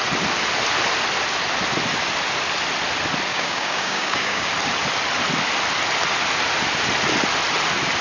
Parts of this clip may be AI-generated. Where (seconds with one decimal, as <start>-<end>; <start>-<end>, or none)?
3.3-4.5